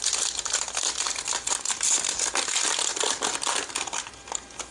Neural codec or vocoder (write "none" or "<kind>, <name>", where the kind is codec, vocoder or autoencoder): vocoder, BigVGAN v2